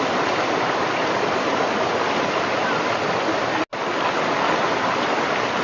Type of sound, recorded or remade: recorded